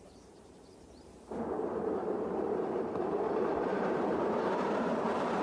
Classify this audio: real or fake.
fake